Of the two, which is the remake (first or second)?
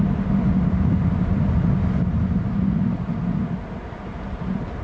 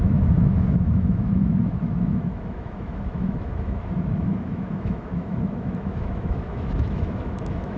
second